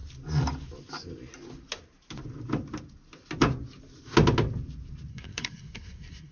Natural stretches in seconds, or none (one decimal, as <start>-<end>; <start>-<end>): 0.0-5.1